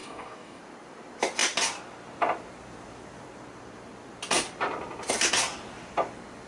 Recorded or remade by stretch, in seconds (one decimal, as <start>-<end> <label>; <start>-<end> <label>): 0.0-0.6 remade; 0.6-6.5 recorded